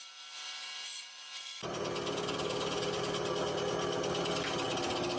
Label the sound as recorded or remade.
recorded